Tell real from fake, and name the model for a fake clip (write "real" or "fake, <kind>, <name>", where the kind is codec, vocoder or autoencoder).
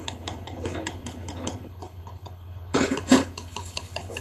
fake, codec, HILCodec